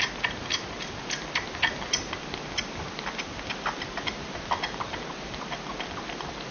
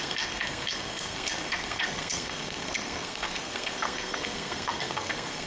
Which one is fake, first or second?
second